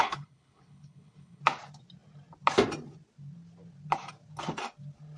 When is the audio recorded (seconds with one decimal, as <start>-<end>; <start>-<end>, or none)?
1.4-5.2